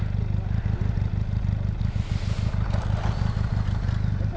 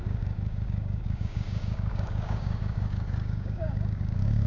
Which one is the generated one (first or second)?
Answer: second